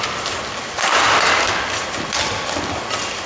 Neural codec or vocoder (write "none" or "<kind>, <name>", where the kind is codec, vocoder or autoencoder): none